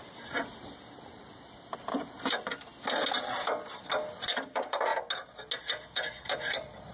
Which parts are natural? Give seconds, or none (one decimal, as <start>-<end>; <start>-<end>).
2.5-4.2; 4.9-5.6